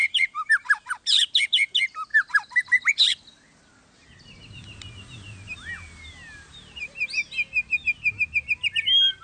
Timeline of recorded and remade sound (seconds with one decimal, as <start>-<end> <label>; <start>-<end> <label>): 0.0-0.9 remade; 0.9-2.1 recorded; 2.1-3.0 remade; 3.0-6.5 recorded; 6.5-7.1 remade; 7.1-9.2 recorded